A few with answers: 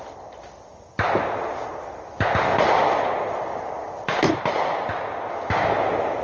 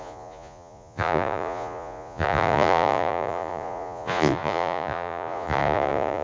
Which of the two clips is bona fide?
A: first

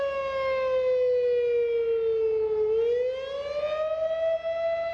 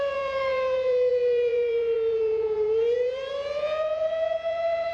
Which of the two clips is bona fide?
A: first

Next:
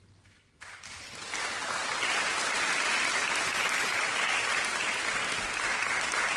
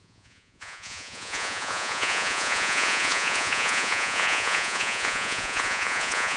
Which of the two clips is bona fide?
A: first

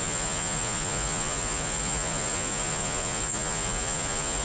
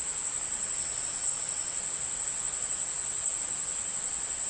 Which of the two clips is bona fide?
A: second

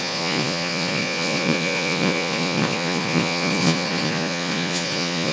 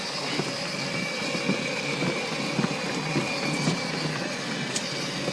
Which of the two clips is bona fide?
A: second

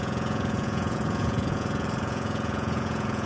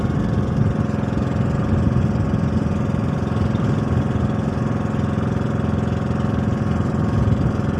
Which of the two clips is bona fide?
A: second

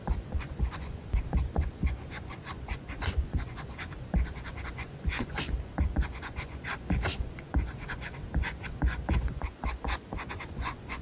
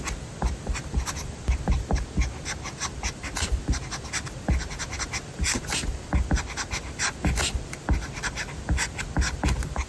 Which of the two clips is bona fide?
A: second